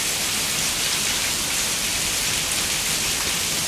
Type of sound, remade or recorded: recorded